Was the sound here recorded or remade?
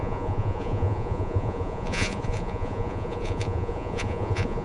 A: remade